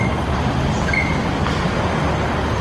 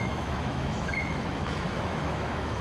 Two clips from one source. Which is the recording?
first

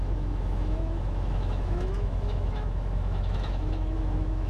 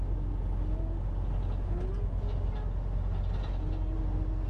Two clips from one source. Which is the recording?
second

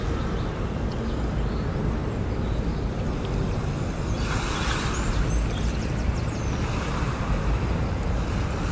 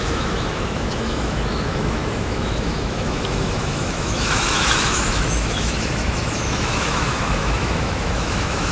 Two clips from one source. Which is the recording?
first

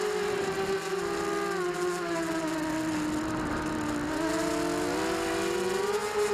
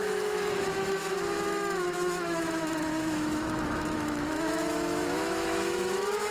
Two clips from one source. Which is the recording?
first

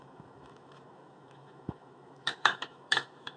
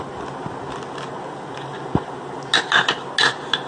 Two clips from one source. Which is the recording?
second